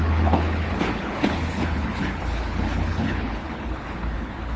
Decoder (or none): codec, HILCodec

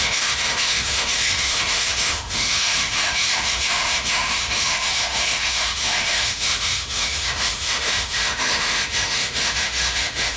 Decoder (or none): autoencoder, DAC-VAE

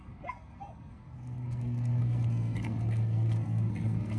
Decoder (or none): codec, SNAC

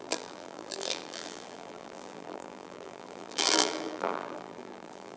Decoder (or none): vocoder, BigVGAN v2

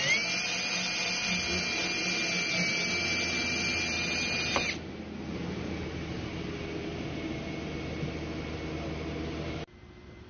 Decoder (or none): none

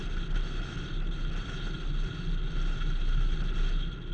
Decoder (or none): none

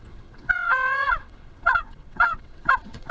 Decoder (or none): vocoder, WaveNeXt